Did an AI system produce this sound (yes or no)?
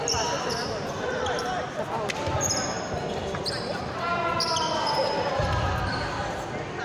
no